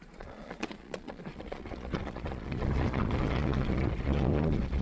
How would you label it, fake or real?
fake